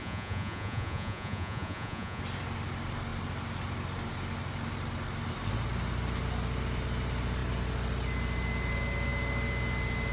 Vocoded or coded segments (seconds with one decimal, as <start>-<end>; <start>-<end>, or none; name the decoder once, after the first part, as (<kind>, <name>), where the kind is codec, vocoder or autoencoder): 0.0-2.2 (vocoder, Vocos)